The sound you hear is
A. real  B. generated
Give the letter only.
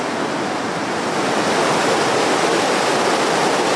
A